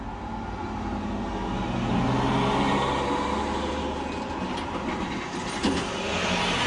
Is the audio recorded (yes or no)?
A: yes